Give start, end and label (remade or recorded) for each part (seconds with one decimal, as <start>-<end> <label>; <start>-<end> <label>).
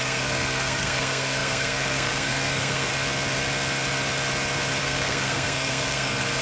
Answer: 0.0-2.9 remade; 2.9-4.8 recorded; 4.8-6.4 remade